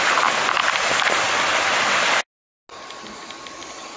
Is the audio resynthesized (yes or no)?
no